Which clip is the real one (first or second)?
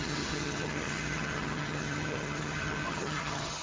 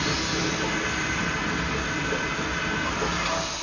second